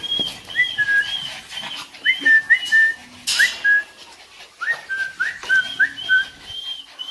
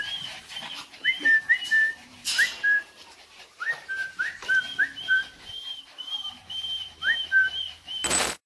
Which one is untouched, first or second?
first